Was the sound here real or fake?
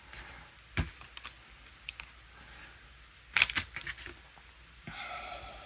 real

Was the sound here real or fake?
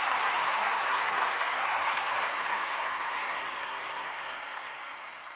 fake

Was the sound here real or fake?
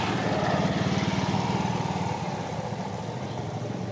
real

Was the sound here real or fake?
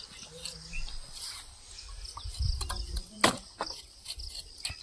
real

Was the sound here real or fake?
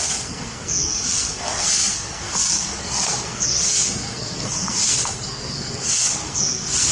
fake